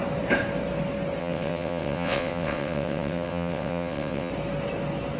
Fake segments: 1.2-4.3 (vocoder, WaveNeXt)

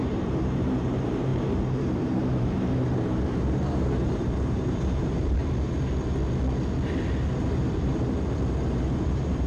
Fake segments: 0.0-5.4 (vocoder, BigVGAN v2); 7.4-7.9; 8.7-9.5

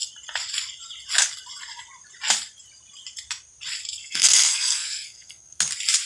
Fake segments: 4.0-5.6 (codec, SNAC)

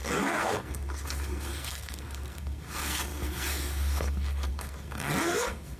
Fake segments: 0.0-5.8 (codec, SNAC)

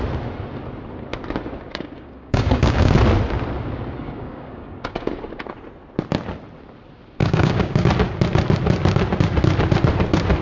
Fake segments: 1.7-2.9 (codec, DAC); 4.0-5.1; 7.2-7.9

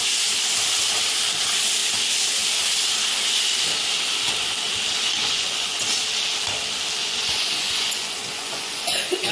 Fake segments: 5.2-5.8 (vocoder, Vocos); 7.0-9.3